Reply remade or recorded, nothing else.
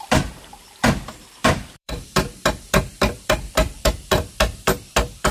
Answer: remade